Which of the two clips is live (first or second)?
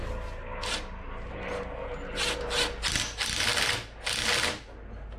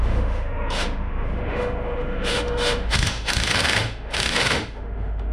first